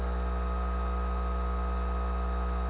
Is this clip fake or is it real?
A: real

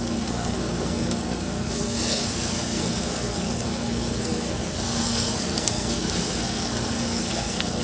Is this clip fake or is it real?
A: fake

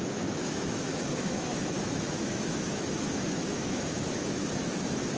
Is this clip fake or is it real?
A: fake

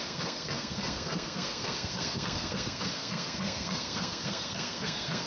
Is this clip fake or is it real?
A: fake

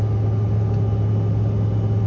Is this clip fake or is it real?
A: real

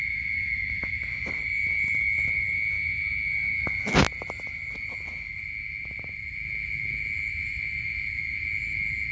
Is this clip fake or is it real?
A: real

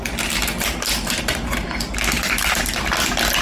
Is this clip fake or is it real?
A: real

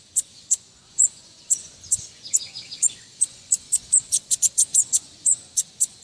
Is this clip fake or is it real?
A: fake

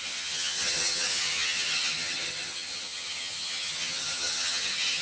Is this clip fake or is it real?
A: fake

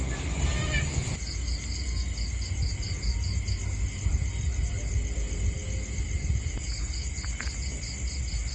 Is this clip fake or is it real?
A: real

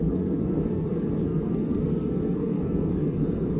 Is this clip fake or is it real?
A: fake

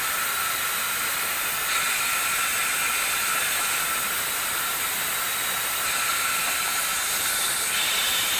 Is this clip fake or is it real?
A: real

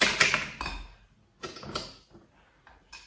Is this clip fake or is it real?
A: real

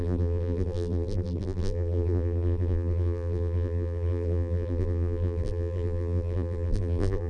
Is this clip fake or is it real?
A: fake